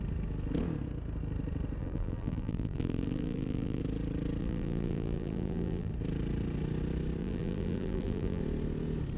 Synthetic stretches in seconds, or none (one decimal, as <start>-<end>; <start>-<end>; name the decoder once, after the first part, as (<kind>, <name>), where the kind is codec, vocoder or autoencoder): 1.8-3.8 (vocoder, BigVGAN v2); 4.4-5.9; 7.2-8.4